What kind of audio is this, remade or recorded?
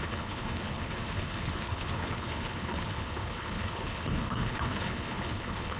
remade